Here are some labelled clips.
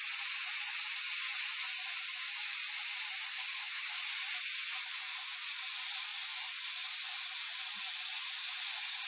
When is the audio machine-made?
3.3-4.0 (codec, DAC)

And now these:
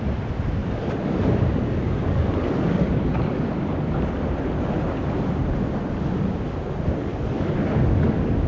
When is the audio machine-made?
0.6-4.1 (codec, DAC); 7.1-8.5

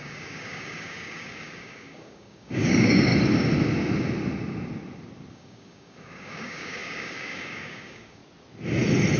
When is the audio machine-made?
0.0-3.1 (codec, DAC); 5.3-8.2

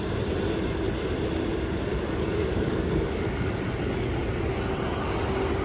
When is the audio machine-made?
1.9-3.6 (codec, DAC)

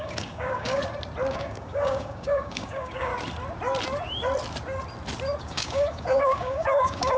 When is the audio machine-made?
0.0-0.8 (codec, DAC); 1.3-3.1; 5.4-7.2

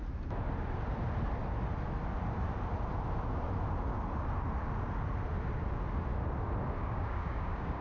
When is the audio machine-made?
6.8-7.8 (codec, DAC)